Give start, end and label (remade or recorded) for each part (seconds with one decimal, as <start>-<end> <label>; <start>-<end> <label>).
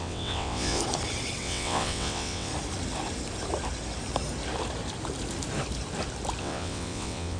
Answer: 0.0-0.8 remade; 0.8-1.4 recorded; 1.4-2.5 remade; 2.5-6.4 recorded; 6.4-7.4 remade